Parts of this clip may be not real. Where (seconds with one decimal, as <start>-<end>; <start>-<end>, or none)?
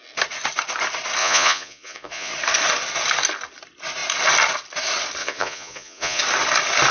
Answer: 1.2-2.3; 5.2-6.2